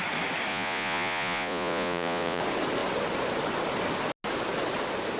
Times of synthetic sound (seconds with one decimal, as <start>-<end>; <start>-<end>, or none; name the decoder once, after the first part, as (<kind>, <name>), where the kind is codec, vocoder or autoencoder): 0.5-2.4 (vocoder, Vocos)